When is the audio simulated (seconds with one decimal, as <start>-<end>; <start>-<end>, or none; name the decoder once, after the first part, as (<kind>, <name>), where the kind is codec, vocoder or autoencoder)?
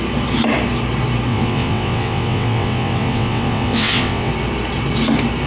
1.3-4.3 (vocoder, WaveNeXt)